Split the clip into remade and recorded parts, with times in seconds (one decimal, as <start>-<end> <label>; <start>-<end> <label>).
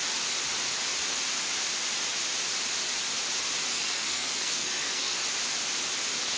0.0-3.7 recorded; 3.7-5.2 remade; 5.2-6.4 recorded